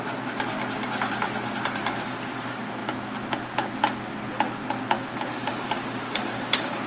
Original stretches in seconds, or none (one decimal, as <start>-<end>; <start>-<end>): 0.0-5.5